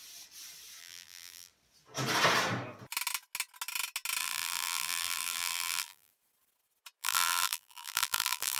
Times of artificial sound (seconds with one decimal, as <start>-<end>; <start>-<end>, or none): 0.8-1.5; 4.2-6.1; 7.0-8.6